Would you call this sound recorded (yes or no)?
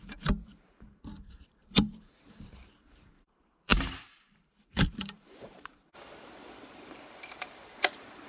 no